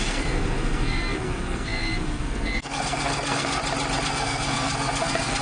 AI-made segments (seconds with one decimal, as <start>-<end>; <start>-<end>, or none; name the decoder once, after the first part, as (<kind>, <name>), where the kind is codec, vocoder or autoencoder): 0.0-3.6 (codec, SNAC); 4.1-5.4